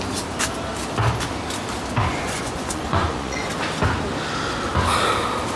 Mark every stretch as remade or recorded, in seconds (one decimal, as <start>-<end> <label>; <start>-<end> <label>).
0.0-2.1 recorded; 2.1-3.5 remade; 3.5-5.6 recorded

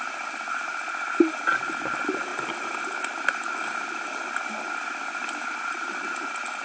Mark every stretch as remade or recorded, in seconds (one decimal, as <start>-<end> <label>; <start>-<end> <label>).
0.0-6.6 recorded

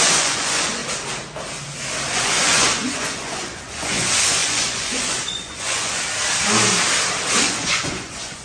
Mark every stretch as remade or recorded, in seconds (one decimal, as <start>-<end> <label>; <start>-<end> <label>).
0.0-0.8 remade; 0.8-2.1 recorded; 2.1-6.0 remade; 6.0-7.4 recorded; 7.4-8.4 remade

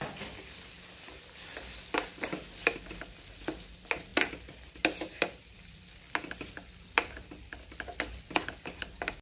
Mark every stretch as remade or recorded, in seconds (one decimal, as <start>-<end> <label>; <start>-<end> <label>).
0.0-9.2 recorded

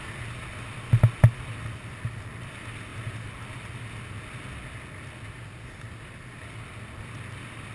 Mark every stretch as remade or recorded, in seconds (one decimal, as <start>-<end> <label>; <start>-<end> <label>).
0.0-7.7 recorded

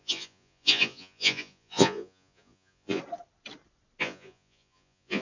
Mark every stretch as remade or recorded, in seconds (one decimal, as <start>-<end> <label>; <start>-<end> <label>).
0.0-3.0 remade; 3.0-4.0 recorded; 4.0-5.2 remade

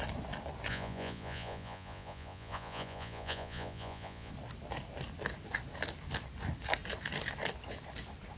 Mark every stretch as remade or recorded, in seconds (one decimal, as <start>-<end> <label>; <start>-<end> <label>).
0.0-0.7 recorded; 0.7-4.3 remade; 4.3-8.4 recorded

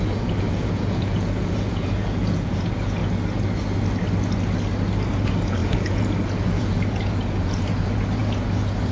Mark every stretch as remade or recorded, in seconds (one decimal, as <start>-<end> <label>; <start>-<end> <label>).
0.0-3.0 remade; 3.0-5.1 recorded; 5.1-8.9 remade